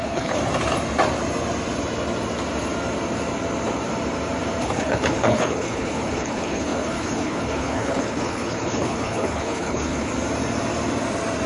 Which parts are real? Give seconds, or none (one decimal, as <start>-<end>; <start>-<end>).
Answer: 0.4-4.6; 10.1-11.5

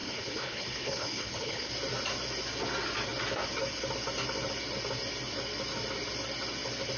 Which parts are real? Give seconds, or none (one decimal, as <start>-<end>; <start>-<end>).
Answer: 1.7-7.0

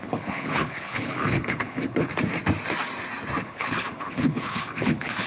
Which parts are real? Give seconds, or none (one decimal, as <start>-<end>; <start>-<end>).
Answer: 2.1-3.4

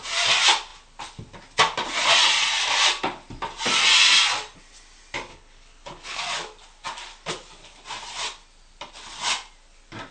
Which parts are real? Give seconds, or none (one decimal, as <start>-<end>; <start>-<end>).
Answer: 0.0-5.3; 6.2-10.1

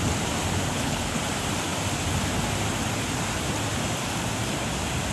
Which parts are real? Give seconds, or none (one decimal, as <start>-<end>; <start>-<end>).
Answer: 0.0-0.7; 1.2-5.1

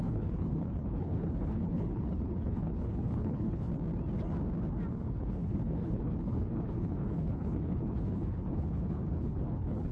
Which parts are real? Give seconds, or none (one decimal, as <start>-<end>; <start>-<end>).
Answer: 3.7-4.9